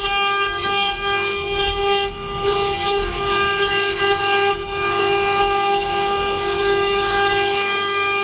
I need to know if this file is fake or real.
fake